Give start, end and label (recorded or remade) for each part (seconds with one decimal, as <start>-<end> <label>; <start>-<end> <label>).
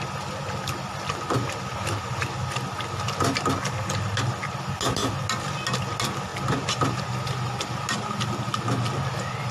0.0-9.5 recorded